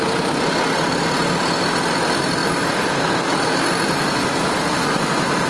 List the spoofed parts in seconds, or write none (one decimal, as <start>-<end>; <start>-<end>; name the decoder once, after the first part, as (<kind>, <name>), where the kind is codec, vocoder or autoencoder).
none